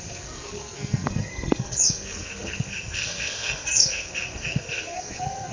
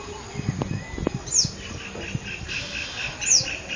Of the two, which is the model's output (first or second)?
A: first